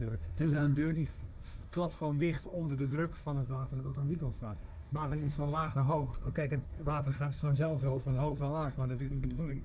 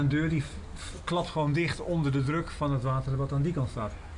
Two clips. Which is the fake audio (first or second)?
first